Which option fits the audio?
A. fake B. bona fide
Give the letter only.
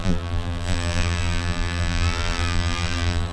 A